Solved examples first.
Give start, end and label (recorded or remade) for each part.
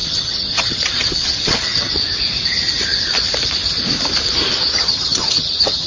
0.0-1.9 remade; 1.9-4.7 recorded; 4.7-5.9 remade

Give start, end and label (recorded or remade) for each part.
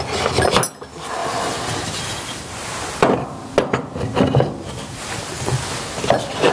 0.0-6.5 recorded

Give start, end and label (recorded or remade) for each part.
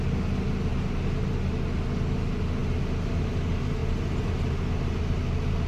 0.0-5.7 recorded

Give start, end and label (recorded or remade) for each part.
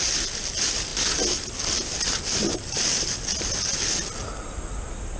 0.0-5.2 recorded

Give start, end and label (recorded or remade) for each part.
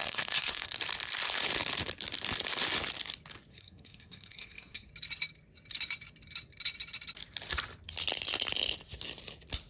0.0-0.7 remade; 0.7-3.5 recorded; 3.5-4.9 remade; 4.9-9.7 recorded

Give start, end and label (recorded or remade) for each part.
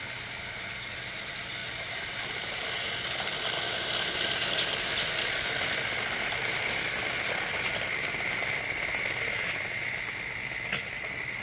0.0-1.6 recorded; 1.6-2.5 remade; 2.5-11.4 recorded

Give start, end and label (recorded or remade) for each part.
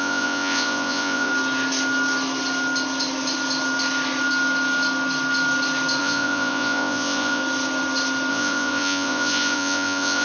0.0-1.3 remade; 1.3-6.0 recorded; 6.0-7.4 remade; 7.4-8.3 recorded; 8.3-10.2 remade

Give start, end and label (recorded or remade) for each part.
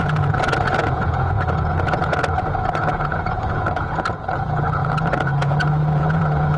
0.0-6.6 remade